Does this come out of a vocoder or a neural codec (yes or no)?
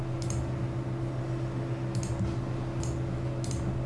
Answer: no